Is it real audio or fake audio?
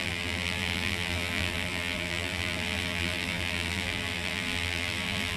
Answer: fake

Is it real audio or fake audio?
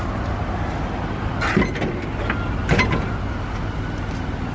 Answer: real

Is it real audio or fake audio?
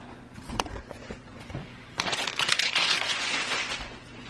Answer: fake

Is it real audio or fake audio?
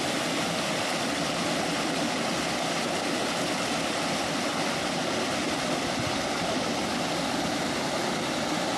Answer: real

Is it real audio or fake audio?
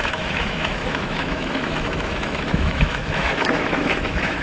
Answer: fake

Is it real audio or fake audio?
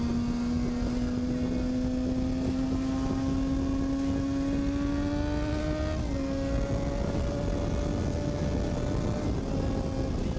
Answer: real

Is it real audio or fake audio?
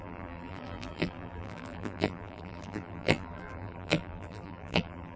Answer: fake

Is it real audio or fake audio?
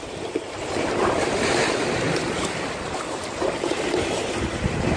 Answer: real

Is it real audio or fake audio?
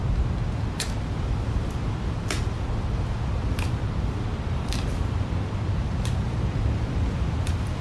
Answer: fake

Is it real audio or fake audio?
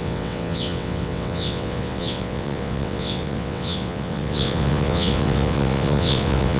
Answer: fake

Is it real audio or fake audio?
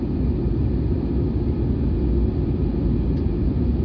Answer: real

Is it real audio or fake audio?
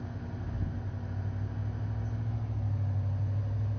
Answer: real